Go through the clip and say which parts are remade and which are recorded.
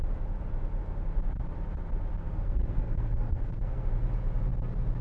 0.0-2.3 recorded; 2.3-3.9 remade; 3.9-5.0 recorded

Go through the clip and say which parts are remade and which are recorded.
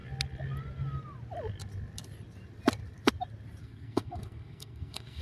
0.0-3.6 recorded; 3.6-5.2 remade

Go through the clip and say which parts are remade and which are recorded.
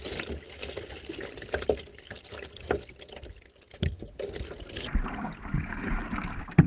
0.0-6.7 recorded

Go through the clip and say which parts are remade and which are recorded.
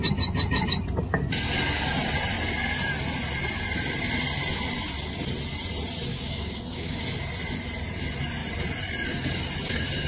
0.0-6.1 recorded; 6.1-7.0 remade; 7.0-10.1 recorded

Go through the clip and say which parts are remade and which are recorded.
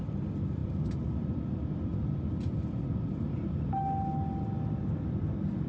0.0-0.6 recorded; 0.6-3.7 remade; 3.7-5.7 recorded